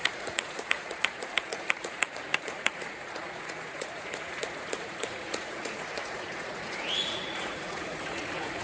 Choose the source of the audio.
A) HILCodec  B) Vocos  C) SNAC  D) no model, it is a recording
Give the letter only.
B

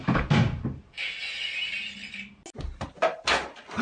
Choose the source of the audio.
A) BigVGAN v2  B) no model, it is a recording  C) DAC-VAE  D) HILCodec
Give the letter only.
B